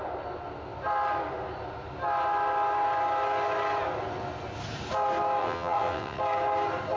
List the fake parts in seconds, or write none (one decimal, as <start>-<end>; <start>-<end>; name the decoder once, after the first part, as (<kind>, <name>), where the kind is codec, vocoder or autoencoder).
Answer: 5.4-6.2 (vocoder, WaveNeXt)